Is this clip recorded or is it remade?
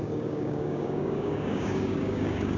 remade